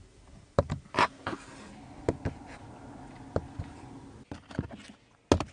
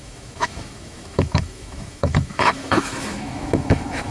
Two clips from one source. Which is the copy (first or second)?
second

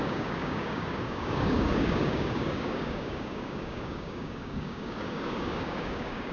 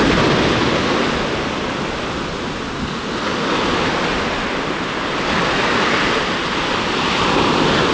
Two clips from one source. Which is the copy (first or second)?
first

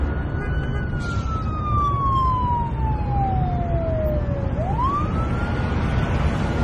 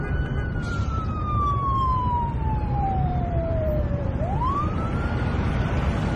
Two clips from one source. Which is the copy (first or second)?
second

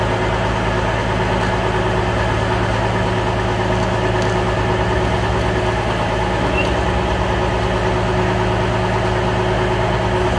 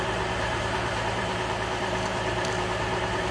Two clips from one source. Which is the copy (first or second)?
second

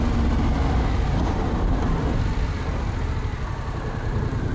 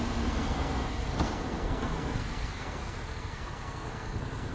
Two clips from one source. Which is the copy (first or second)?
second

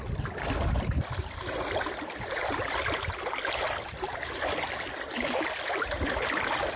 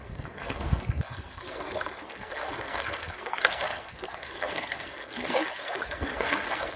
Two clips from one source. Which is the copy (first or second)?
second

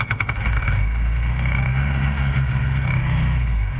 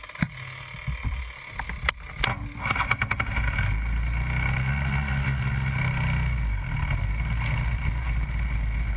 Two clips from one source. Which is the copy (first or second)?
first